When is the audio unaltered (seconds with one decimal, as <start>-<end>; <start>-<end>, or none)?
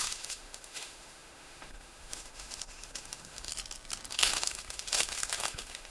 3.5-4.1